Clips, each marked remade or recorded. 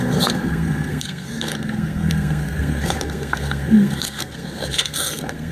remade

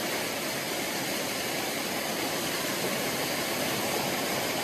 recorded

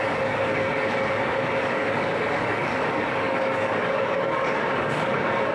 remade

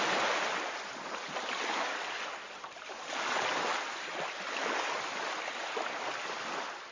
recorded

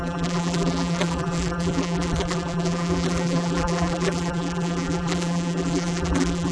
remade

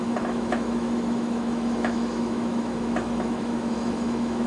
remade